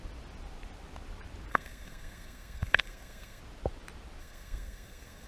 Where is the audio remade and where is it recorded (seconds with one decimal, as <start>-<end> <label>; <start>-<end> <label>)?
0.0-1.5 recorded; 1.5-3.4 remade; 3.4-4.2 recorded; 4.2-5.3 remade